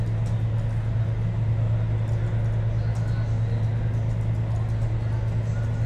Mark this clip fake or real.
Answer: real